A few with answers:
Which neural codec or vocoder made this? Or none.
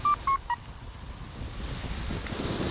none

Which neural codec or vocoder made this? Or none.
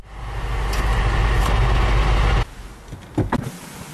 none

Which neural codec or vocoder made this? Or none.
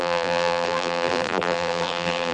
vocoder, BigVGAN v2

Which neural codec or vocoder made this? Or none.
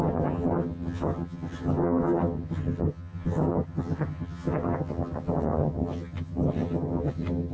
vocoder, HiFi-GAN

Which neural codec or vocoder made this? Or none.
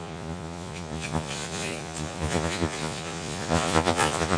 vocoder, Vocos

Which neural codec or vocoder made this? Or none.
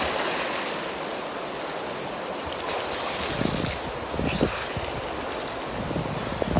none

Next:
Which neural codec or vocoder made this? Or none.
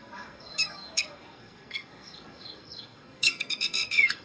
codec, SNAC